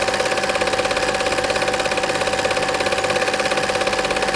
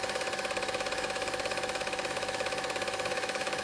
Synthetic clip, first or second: second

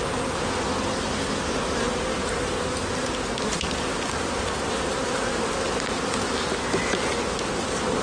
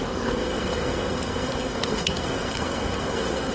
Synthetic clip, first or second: second